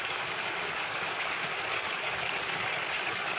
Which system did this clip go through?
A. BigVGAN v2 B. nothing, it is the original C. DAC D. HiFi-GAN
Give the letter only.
C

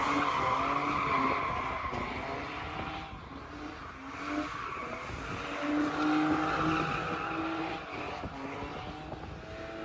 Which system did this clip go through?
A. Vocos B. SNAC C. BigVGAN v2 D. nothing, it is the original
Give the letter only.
D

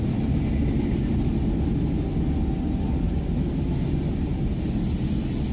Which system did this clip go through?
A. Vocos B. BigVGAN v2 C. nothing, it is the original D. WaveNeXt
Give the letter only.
C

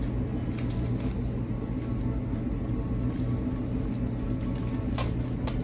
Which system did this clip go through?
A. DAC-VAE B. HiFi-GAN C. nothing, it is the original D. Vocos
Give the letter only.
C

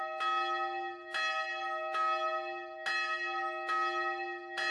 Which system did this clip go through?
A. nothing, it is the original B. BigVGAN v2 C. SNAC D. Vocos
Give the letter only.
A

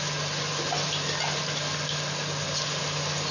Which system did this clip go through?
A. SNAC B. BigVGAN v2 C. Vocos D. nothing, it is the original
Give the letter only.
D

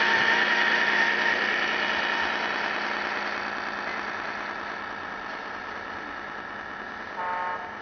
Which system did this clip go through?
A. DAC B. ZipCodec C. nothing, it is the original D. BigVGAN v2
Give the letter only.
C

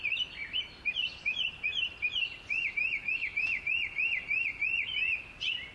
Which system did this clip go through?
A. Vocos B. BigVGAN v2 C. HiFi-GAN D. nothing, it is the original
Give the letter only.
D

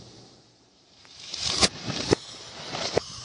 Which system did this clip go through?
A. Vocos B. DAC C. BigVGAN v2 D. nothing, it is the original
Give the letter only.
C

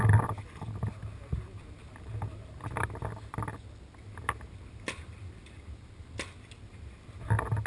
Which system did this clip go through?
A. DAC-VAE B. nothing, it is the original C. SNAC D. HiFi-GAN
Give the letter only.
B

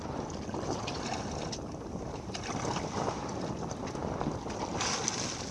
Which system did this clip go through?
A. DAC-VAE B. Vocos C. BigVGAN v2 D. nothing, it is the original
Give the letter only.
D